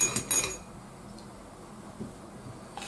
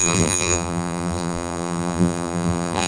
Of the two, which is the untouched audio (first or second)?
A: first